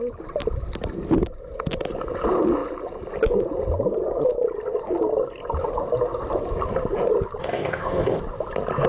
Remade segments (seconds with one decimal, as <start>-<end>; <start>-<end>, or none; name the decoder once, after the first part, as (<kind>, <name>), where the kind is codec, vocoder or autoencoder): 7.4-8.2 (codec, ZipCodec)

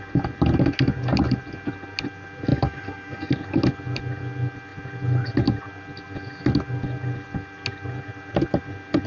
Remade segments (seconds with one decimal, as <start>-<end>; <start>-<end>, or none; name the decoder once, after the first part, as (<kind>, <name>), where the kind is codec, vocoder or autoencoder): 2.5-3.3 (codec, DAC)

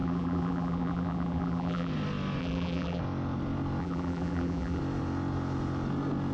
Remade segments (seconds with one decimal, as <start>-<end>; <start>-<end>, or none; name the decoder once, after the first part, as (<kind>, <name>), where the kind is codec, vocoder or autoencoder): 0.0-1.9 (vocoder, BigVGAN v2); 2.4-3.0; 3.8-4.8

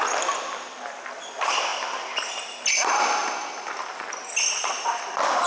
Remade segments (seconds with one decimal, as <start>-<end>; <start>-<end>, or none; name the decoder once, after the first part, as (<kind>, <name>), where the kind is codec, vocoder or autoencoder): none

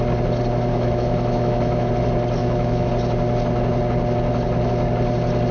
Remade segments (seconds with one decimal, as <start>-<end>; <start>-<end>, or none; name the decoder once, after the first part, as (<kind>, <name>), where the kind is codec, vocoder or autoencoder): 0.7-1.9 (autoencoder, DAC-VAE); 2.4-2.9

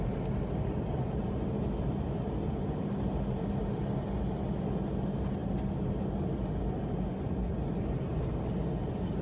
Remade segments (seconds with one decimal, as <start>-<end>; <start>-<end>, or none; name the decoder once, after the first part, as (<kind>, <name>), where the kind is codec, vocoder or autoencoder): none

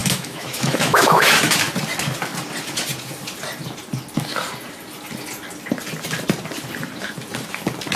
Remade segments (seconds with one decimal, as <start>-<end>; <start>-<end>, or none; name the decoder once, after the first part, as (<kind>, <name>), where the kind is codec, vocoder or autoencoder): 0.0-1.6 (autoencoder, DAC-VAE)